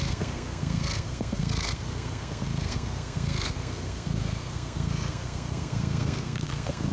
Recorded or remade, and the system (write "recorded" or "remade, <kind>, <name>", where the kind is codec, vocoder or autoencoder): remade, codec, SNAC